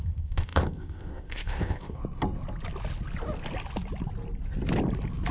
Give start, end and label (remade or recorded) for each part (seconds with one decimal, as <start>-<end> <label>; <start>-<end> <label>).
0.0-2.0 remade; 2.0-5.3 recorded